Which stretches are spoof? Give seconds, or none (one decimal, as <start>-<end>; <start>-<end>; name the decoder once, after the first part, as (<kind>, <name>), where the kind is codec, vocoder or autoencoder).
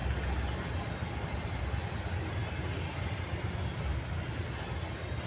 none